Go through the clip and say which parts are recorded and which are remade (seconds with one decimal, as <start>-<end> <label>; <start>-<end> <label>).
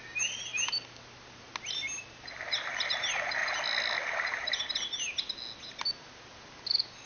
0.0-7.1 recorded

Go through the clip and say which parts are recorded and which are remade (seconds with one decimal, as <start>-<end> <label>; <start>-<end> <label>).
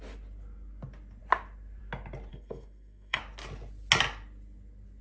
0.0-2.3 recorded; 2.3-3.2 remade; 3.2-5.0 recorded